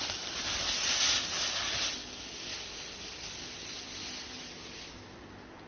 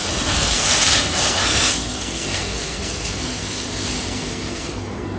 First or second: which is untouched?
first